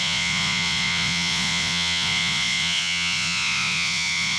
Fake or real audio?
fake